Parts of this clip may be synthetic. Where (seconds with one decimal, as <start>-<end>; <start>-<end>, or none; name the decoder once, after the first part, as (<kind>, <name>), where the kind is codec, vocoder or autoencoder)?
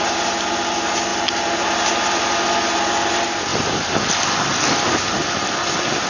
3.5-4.0 (vocoder, BigVGAN v2)